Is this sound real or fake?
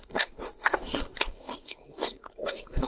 fake